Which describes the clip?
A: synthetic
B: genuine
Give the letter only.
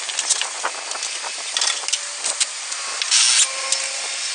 B